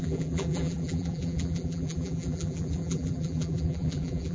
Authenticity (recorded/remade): remade